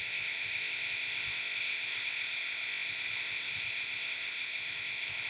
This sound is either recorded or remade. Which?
remade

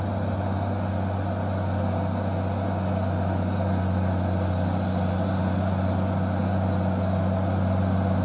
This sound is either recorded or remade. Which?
recorded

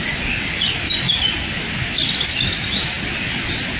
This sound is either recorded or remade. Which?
recorded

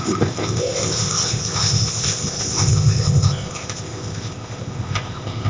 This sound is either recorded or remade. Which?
remade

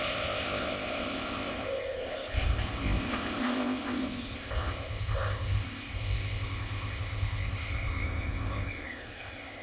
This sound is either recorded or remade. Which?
remade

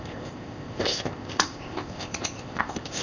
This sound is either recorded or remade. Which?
remade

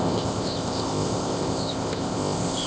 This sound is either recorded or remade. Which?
remade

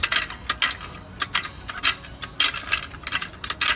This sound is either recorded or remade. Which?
recorded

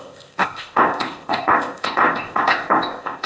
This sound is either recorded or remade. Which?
remade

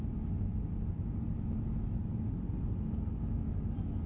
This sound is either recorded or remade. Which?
recorded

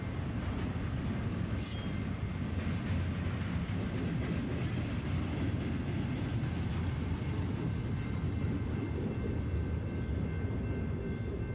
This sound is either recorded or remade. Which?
recorded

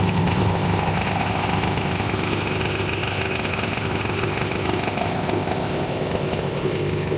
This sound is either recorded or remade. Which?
remade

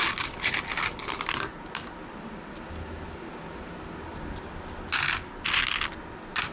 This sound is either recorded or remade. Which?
recorded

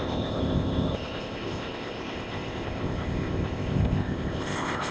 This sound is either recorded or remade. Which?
remade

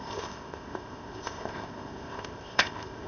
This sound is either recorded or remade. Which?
remade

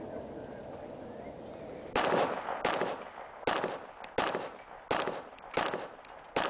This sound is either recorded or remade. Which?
recorded